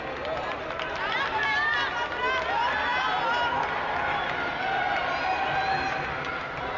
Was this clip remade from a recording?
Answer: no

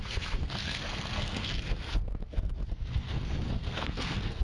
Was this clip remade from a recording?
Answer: yes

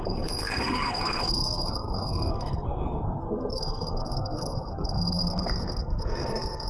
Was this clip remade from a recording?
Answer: yes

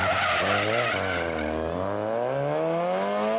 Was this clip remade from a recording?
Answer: no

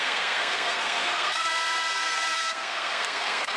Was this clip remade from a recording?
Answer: yes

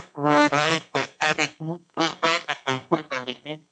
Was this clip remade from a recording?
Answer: yes